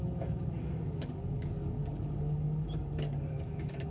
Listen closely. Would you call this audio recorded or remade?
remade